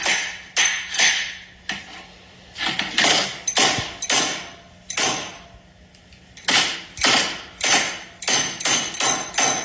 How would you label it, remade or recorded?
recorded